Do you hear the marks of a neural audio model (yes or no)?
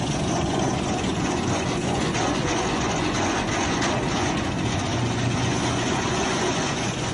yes